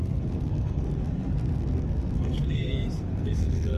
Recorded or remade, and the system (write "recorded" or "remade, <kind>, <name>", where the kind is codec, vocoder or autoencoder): remade, codec, SNAC